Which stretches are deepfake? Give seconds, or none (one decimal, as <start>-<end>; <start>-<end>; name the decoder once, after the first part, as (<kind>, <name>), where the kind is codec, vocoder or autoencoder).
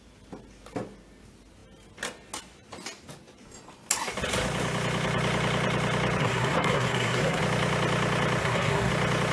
6.2-7.4 (codec, SNAC); 8.4-8.9